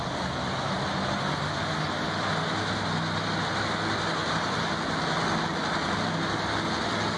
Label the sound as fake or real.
real